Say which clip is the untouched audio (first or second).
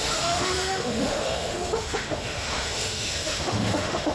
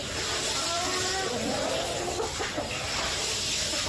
second